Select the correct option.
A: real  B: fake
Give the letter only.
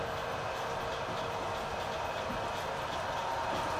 A